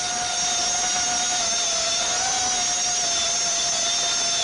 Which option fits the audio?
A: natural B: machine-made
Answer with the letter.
A